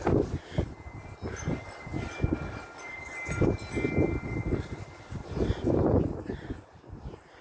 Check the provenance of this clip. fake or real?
real